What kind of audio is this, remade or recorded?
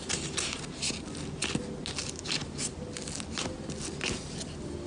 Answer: recorded